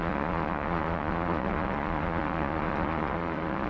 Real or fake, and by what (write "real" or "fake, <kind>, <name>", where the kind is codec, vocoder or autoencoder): fake, vocoder, Vocos